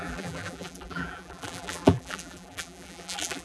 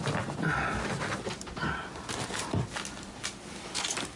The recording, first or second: second